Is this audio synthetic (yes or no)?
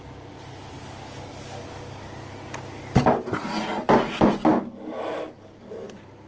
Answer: no